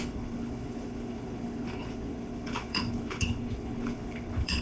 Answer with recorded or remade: remade